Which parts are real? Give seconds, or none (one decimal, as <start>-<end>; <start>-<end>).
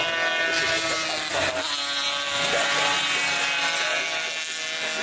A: 0.0-5.0